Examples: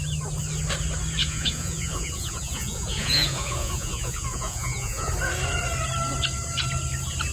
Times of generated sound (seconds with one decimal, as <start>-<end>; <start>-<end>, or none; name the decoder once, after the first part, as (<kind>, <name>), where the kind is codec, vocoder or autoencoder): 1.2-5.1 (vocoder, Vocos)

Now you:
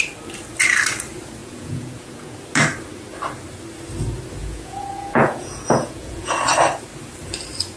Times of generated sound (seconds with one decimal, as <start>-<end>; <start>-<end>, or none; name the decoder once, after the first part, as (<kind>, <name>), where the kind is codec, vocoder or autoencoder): 1.4-2.4 (vocoder, Vocos); 4.4-6.4

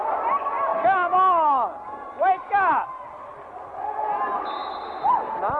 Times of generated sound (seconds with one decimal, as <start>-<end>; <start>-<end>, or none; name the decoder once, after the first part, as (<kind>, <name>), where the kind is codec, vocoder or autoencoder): none

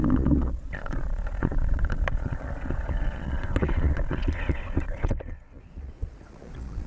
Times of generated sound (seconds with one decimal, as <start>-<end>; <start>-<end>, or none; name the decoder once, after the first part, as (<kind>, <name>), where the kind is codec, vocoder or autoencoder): 0.0-6.9 (vocoder, Vocos)

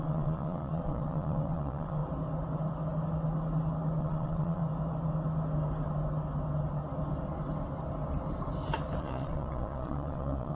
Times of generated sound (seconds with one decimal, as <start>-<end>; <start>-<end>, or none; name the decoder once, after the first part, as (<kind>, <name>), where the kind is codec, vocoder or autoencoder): 0.0-2.0 (vocoder, Vocos); 4.0-4.6; 9.0-10.5

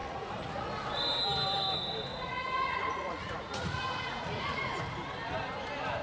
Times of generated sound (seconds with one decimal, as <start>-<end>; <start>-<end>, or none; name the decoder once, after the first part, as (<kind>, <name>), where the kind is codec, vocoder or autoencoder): 0.0-0.7 (vocoder, Vocos); 2.1-4.8